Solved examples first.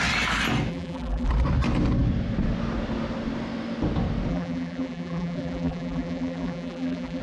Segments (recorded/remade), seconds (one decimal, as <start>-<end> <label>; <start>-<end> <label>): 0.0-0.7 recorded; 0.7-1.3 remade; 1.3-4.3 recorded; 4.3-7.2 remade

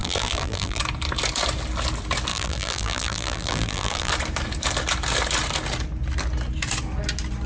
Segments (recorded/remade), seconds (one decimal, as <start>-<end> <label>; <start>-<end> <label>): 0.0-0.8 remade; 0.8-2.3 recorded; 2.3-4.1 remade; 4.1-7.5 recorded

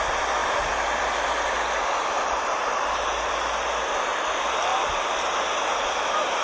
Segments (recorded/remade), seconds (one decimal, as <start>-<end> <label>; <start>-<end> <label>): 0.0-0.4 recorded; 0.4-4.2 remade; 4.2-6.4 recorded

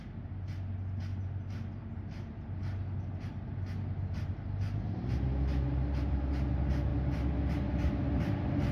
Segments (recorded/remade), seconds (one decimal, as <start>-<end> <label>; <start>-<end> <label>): 0.0-8.7 recorded

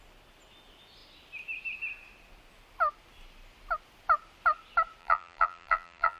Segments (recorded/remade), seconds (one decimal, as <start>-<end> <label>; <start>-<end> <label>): 0.0-5.0 recorded; 5.0-6.2 remade